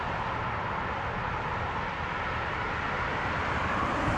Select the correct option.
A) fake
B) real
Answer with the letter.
B